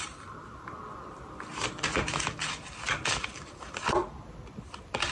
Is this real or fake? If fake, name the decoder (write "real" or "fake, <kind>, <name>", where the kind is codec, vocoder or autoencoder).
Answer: real